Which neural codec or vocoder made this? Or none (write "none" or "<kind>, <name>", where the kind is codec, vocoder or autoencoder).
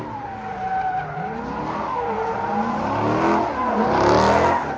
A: none